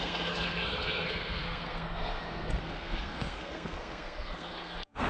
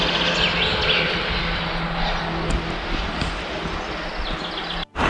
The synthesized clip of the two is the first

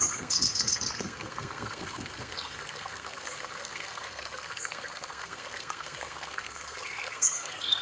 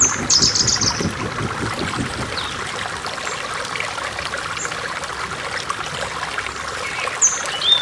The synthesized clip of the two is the first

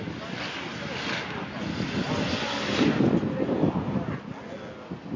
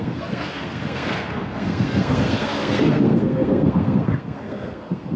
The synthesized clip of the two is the second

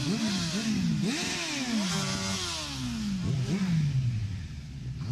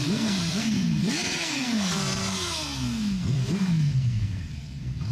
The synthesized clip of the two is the second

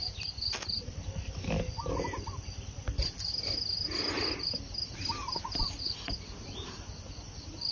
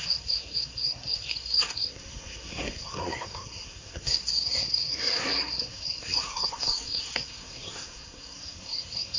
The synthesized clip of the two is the second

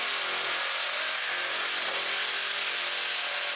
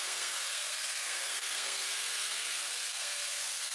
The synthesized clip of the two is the second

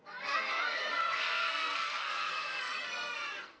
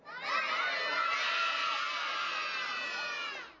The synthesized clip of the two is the first